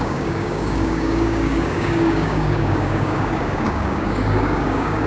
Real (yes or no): no